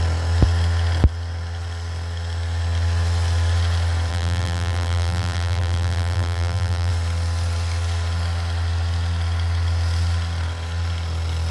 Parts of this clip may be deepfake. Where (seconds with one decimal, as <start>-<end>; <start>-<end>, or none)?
4.1-6.9